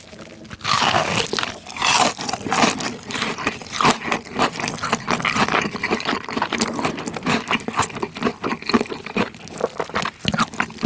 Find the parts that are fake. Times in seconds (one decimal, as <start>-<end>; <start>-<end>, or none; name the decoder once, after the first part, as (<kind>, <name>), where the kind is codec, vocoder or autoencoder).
1.9-4.4 (vocoder, BigVGAN v2)